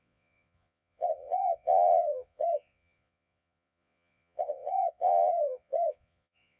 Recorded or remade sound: remade